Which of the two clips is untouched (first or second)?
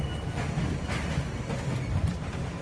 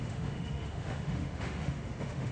first